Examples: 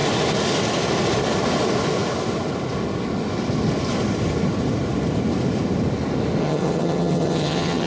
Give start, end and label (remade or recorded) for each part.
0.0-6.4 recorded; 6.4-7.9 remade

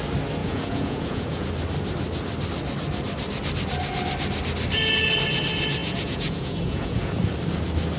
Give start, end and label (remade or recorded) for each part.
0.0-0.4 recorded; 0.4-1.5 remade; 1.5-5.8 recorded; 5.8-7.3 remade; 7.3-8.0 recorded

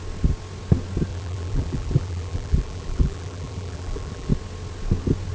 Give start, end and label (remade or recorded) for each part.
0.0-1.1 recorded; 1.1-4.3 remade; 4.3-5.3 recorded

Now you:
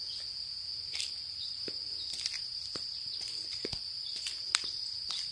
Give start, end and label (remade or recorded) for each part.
0.0-0.7 recorded; 0.7-1.7 remade; 1.7-2.5 recorded; 2.5-4.7 remade; 4.7-5.3 recorded

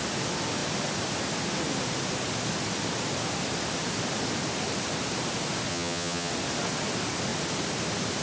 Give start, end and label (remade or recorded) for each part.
0.0-5.7 recorded; 5.7-6.3 remade; 6.3-8.2 recorded

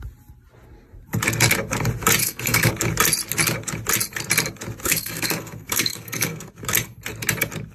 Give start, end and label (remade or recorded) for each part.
0.0-2.2 recorded; 2.2-2.7 remade; 2.7-4.8 recorded; 4.8-6.5 remade; 6.5-7.7 recorded

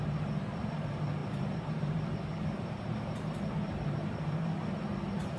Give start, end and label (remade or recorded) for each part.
0.0-5.4 remade